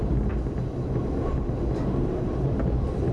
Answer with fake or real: real